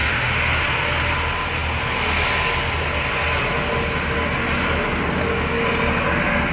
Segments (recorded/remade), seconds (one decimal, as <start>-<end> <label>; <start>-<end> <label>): 0.0-0.6 remade; 0.6-6.5 recorded